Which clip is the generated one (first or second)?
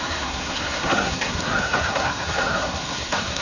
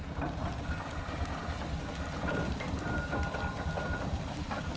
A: first